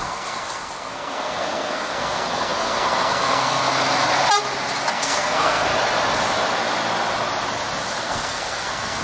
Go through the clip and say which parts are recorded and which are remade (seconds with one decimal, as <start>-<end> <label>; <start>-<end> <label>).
0.0-3.6 remade; 3.6-4.9 recorded; 4.9-5.7 remade; 5.7-8.0 recorded; 8.0-9.0 remade